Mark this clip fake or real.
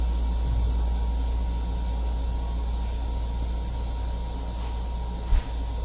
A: real